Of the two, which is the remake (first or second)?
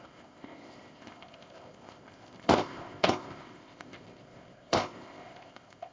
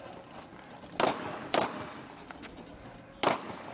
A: first